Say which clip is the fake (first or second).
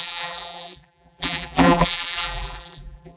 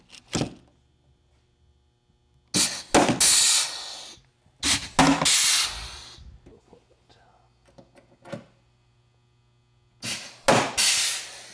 first